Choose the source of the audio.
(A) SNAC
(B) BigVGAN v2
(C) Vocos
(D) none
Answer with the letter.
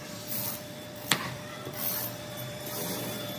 B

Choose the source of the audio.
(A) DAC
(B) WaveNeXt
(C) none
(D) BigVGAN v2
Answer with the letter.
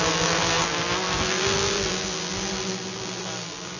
D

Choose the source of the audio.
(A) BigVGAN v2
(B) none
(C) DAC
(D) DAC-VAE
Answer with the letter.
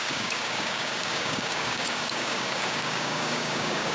C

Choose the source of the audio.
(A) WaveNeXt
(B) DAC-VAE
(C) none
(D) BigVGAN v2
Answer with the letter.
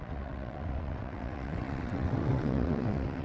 A